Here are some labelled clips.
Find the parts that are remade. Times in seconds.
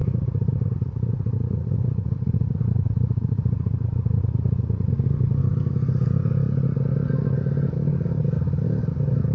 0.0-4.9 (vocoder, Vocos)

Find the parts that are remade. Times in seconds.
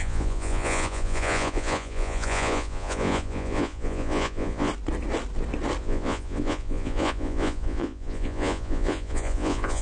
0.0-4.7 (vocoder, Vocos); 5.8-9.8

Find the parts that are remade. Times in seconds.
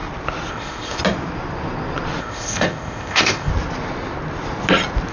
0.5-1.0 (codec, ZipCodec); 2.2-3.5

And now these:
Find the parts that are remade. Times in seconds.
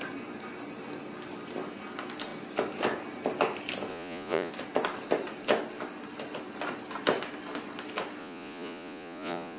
3.9-4.5 (vocoder, Vocos); 8.2-9.6